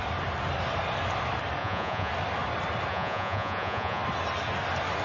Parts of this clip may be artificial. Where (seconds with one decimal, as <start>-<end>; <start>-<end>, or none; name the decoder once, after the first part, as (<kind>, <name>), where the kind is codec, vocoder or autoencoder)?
1.6-2.1 (vocoder, Vocos); 2.9-4.0